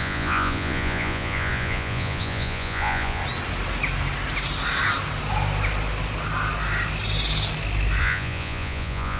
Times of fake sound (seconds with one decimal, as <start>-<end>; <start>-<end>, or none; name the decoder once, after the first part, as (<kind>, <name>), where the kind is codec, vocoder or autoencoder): 0.0-3.2 (vocoder, Vocos); 8.0-9.2